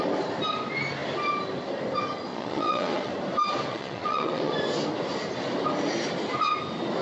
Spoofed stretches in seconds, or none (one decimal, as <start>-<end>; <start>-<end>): 2.3-3.1; 3.7-4.5